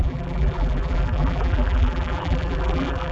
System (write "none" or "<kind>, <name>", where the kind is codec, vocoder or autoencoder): vocoder, BigVGAN v2